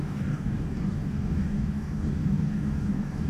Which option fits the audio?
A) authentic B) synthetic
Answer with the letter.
B